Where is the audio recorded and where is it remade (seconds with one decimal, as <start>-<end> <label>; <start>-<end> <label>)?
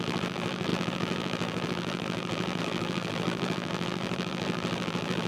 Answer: 0.0-5.3 remade